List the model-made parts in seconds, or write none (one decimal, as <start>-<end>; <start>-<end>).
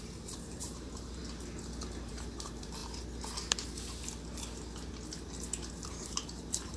0.0-1.2; 2.1-2.8; 5.9-6.8